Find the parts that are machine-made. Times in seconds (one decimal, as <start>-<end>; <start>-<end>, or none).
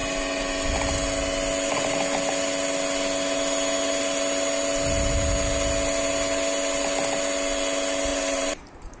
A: 8.1-9.0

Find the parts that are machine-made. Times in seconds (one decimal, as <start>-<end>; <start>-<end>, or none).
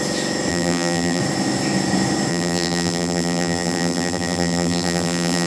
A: 0.5-1.2; 2.3-5.5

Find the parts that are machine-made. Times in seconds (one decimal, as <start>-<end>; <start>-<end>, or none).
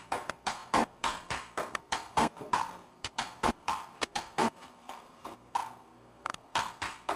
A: 0.0-7.2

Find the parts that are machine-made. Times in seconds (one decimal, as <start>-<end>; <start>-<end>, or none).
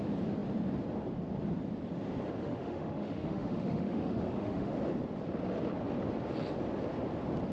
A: 2.4-4.7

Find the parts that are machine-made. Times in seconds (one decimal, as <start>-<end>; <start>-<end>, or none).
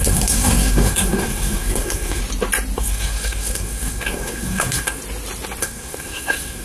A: 0.0-2.2; 2.8-5.0; 5.6-6.6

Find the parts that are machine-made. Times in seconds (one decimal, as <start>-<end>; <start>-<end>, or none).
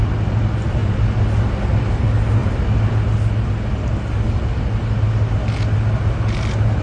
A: none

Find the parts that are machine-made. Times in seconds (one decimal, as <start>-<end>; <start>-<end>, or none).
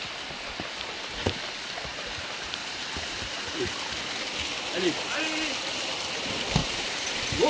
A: 2.6-3.6; 6.6-7.5